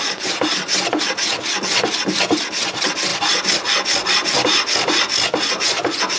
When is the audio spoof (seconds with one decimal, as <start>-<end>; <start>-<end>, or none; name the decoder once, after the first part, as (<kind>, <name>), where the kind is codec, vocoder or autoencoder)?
none